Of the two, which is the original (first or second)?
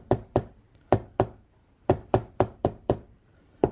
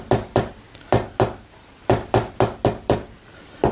second